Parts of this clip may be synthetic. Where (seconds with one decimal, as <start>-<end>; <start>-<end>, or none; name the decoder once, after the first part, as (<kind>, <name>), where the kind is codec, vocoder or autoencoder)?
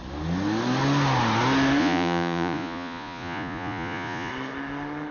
1.8-4.3 (vocoder, Vocos)